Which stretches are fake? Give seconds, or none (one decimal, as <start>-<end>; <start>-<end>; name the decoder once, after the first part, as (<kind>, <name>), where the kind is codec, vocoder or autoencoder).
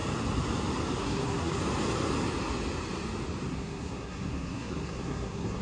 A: 1.0-1.6 (codec, SNAC); 3.5-5.6